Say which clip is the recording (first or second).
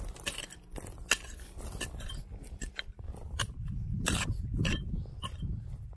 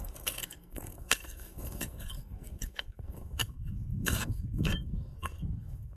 first